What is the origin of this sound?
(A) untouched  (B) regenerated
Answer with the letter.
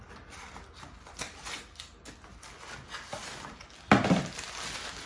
A